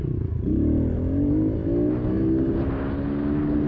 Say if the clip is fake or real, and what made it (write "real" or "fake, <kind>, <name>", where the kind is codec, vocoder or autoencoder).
real